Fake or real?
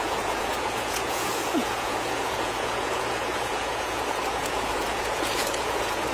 fake